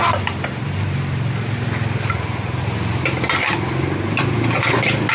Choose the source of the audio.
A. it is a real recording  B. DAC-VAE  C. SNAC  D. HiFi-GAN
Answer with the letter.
A